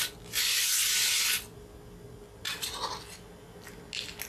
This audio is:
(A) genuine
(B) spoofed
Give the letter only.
A